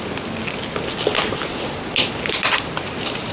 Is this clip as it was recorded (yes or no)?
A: yes